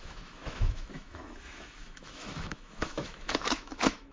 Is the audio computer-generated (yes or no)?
yes